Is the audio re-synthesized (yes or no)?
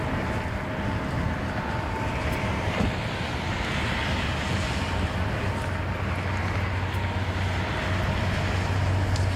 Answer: no